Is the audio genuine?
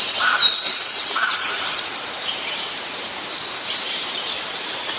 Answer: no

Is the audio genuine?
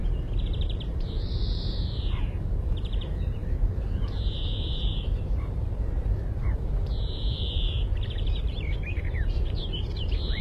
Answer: no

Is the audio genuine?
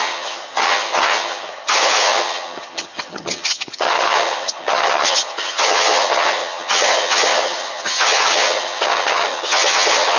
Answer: no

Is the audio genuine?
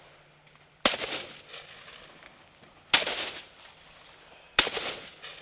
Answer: yes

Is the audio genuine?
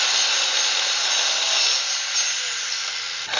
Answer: yes